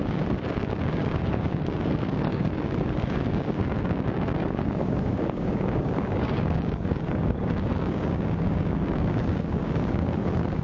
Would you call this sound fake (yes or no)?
yes